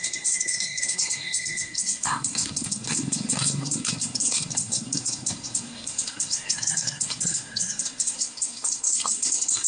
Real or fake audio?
fake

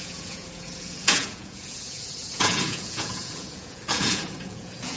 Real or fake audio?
fake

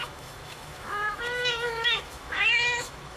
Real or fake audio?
fake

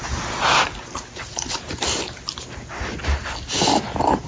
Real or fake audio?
real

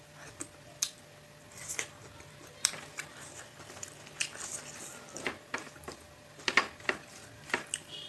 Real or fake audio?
fake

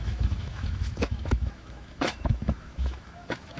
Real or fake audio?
fake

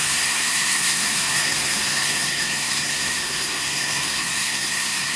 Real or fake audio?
fake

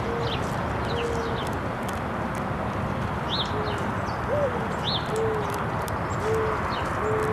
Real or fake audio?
real